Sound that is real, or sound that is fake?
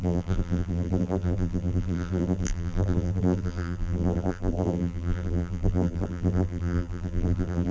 fake